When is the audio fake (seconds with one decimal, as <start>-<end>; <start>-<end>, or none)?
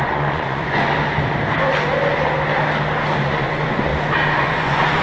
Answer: 0.0-0.9; 3.2-3.9; 4.4-5.0